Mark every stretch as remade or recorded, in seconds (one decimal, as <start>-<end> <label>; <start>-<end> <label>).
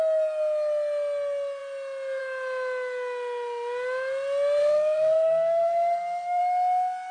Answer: 0.0-4.6 recorded; 4.6-6.4 remade; 6.4-7.1 recorded